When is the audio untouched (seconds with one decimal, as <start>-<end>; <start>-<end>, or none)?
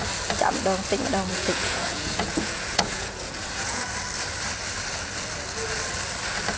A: 0.0-1.3; 3.8-6.6